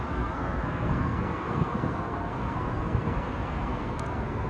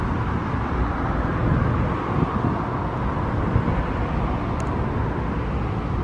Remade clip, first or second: first